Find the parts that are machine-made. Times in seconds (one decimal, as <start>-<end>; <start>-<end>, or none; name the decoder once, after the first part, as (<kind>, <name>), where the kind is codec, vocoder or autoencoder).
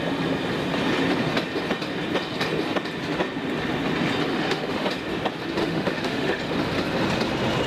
4.3-4.9 (autoencoder, DAC-VAE); 5.6-6.4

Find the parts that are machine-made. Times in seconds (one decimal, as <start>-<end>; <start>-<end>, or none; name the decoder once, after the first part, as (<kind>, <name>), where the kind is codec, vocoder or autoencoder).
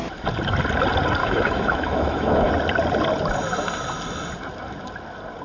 1.2-2.5 (autoencoder, DAC-VAE)